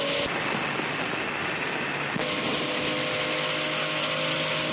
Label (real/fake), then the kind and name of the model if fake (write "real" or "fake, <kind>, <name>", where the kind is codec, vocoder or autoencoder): real